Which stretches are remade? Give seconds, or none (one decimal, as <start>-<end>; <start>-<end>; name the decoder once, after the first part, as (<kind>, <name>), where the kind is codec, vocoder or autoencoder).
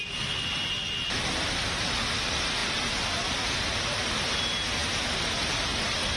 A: none